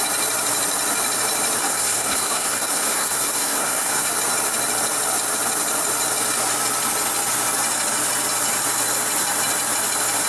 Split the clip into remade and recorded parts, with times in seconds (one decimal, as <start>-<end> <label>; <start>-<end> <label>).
0.0-1.6 recorded; 1.6-4.1 remade; 4.1-10.3 recorded